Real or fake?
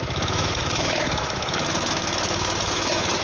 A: fake